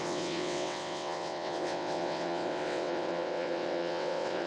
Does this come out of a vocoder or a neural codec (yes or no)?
yes